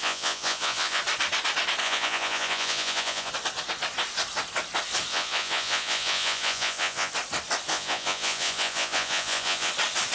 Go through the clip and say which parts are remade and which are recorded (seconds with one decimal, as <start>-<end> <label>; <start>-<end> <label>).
0.0-1.0 remade; 1.0-1.8 recorded; 1.8-3.3 remade; 3.3-5.1 recorded; 5.1-7.1 remade; 7.1-7.7 recorded; 7.7-9.7 remade; 9.7-10.1 recorded